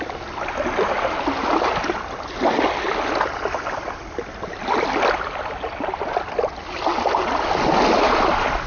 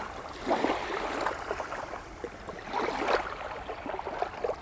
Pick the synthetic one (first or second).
second